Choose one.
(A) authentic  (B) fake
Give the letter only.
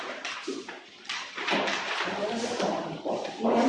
B